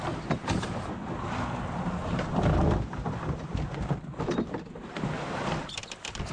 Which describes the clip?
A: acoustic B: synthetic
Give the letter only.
A